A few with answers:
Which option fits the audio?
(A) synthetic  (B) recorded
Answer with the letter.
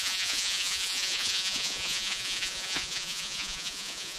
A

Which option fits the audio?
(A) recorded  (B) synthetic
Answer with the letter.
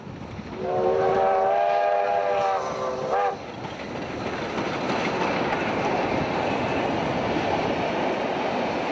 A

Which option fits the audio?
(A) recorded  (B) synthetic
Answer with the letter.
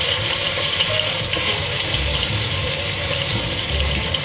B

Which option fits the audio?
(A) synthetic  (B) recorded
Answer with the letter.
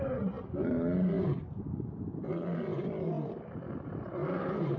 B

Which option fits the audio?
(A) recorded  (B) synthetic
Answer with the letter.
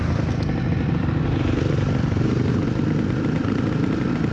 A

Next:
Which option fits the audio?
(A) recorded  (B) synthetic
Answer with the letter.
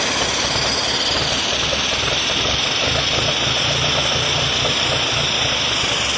A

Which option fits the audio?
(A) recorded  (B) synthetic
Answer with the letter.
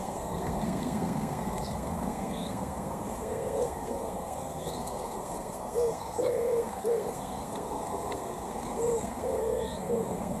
B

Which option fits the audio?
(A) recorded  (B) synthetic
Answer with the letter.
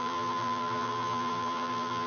B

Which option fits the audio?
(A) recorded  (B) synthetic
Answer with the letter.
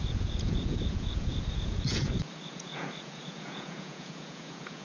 B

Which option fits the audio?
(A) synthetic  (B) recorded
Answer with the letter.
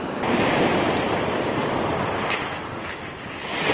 B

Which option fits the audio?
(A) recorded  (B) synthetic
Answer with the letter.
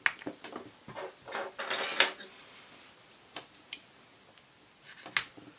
A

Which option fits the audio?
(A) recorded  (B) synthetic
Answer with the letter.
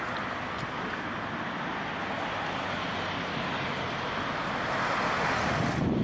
A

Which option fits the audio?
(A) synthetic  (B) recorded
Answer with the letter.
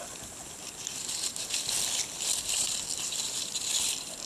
B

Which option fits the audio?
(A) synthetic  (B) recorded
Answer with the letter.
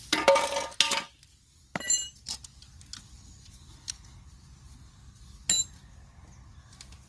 B